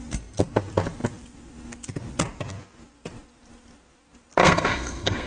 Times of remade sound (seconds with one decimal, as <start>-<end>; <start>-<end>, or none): 4.4-5.3